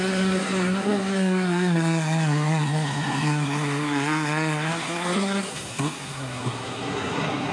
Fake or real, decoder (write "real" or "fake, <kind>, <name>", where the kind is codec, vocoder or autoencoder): fake, codec, SNAC